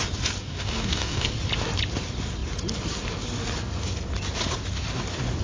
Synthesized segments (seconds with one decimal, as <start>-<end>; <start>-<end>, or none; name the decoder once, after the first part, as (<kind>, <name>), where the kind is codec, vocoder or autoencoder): 0.4-1.3 (codec, DAC)